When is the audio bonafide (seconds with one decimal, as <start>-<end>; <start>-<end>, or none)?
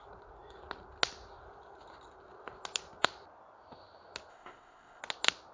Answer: 0.0-4.3; 5.0-5.5